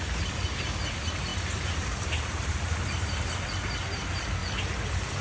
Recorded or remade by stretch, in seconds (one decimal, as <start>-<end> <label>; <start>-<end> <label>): 0.0-1.3 recorded; 1.3-3.3 remade; 3.3-4.4 recorded; 4.4-5.2 remade